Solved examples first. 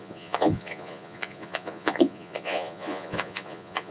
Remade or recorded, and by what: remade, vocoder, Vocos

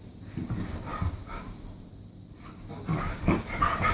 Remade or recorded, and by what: recorded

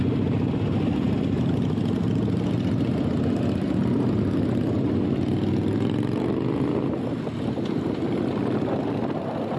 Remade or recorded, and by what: recorded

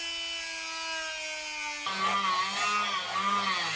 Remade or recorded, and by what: recorded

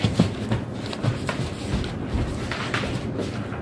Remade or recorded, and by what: recorded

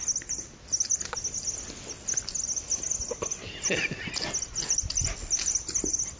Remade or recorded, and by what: recorded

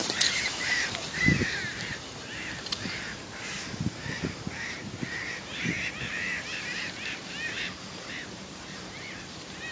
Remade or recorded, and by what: remade, vocoder, BigVGAN v2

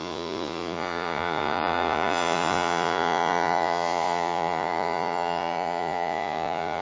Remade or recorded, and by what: remade, vocoder, Vocos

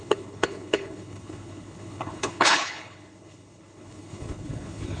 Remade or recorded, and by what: remade, codec, HILCodec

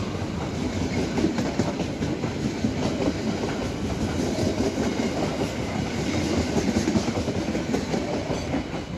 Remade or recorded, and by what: recorded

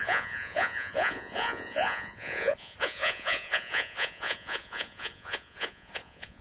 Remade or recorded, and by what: remade, vocoder, Vocos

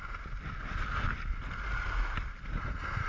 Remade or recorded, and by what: recorded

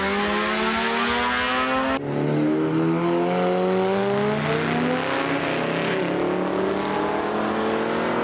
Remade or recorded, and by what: recorded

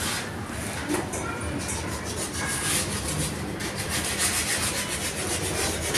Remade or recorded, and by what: recorded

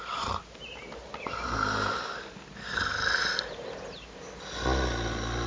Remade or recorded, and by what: recorded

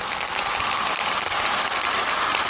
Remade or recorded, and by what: recorded